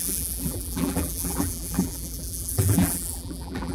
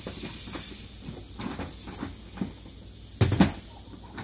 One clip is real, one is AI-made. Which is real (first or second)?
second